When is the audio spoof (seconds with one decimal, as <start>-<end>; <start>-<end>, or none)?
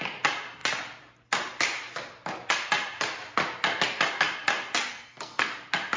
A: 4.9-5.5